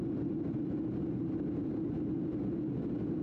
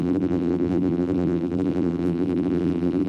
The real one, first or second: first